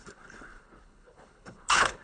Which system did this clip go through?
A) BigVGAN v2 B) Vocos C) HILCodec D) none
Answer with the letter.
C